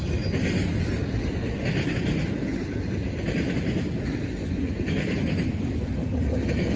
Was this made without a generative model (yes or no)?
yes